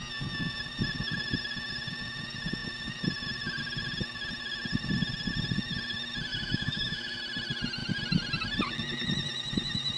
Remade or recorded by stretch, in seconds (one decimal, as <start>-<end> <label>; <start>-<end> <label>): 0.0-6.3 recorded; 6.3-7.2 remade; 7.2-10.0 recorded

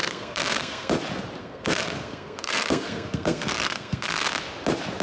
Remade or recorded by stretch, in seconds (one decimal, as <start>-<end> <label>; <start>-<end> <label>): 0.0-0.9 remade; 0.9-1.4 recorded; 1.4-4.3 remade; 4.3-5.0 recorded